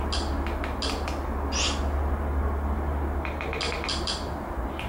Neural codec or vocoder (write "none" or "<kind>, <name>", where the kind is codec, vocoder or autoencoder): none